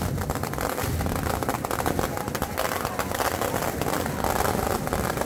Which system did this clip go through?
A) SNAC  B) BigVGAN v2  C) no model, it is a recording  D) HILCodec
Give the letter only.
C